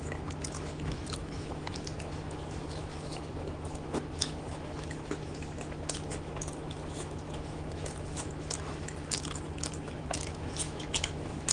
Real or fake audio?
fake